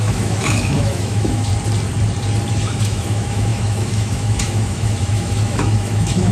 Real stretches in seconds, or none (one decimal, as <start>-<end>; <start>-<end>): 1.5-2.5